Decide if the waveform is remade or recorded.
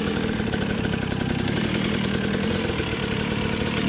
remade